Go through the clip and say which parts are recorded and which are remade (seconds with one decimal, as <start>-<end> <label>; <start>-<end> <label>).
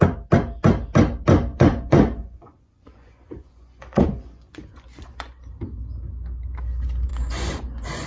0.0-1.5 recorded; 1.5-5.5 remade; 5.5-7.1 recorded; 7.1-8.1 remade